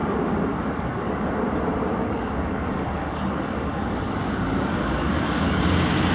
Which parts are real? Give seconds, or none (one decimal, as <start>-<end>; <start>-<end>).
1.3-2.0; 5.6-6.1